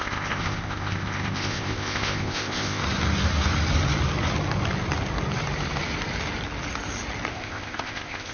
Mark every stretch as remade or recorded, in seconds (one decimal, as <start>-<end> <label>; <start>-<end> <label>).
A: 0.0-2.8 remade; 2.8-7.3 recorded; 7.3-8.3 remade

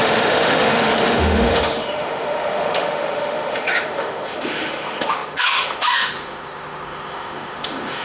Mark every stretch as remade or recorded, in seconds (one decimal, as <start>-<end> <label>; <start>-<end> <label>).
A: 0.0-8.0 remade